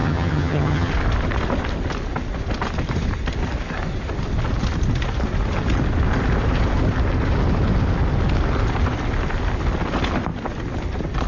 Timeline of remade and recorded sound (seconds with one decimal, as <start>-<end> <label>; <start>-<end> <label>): 0.0-0.9 remade; 0.9-11.3 recorded